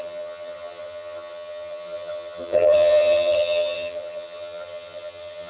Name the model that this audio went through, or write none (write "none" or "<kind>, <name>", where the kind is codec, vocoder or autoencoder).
vocoder, HiFi-GAN